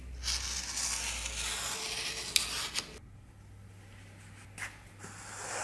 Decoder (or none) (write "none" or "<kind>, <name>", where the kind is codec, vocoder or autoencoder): none